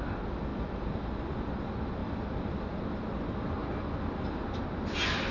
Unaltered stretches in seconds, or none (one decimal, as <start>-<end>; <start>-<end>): 0.0-0.5; 1.1-2.0; 2.8-3.6; 4.5-5.3